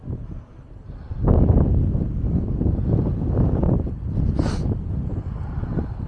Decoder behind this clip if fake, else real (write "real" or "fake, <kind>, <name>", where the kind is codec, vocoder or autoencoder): real